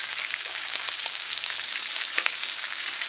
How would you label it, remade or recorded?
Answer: remade